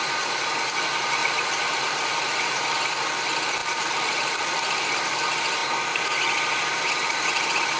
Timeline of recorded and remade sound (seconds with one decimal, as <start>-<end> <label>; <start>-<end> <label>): 0.0-1.2 recorded; 1.2-2.6 remade; 2.6-3.6 recorded; 3.6-4.9 remade; 4.9-7.8 recorded